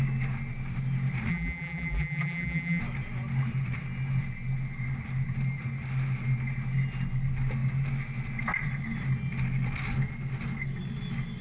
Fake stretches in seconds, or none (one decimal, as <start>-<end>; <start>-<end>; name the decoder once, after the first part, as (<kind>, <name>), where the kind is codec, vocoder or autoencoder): 1.3-2.8 (vocoder, BigVGAN v2)